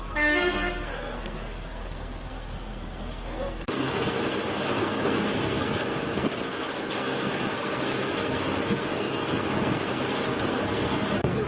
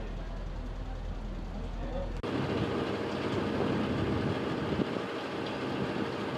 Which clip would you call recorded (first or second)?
second